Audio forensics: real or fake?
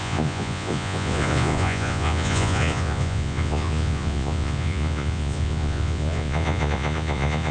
fake